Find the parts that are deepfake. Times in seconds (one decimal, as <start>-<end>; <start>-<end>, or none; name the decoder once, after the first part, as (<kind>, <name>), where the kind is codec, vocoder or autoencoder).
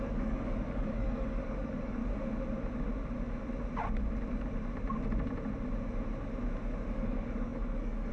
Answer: 0.0-2.0 (codec, DAC); 6.9-8.1